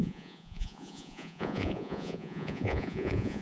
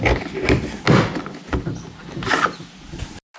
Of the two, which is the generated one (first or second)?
first